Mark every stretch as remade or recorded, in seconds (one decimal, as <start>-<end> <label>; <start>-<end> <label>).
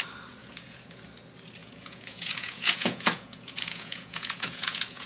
0.0-0.4 recorded; 0.4-1.0 remade; 1.0-1.6 recorded; 1.6-5.1 remade